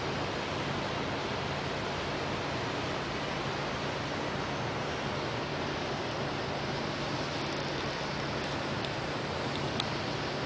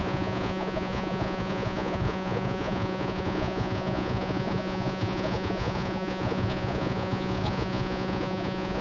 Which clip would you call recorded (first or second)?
first